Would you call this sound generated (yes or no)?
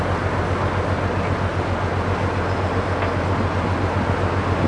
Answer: no